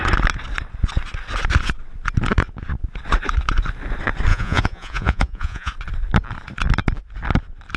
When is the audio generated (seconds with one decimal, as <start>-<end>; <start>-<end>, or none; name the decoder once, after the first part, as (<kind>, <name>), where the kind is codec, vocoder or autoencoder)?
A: 4.3-5.7 (vocoder, Vocos)